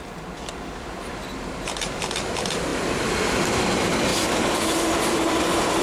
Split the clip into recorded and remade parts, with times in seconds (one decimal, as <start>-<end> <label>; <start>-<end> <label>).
0.0-5.8 recorded